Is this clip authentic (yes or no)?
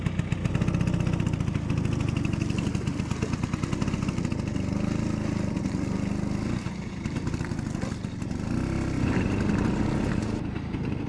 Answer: yes